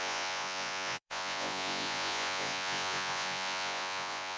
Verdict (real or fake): fake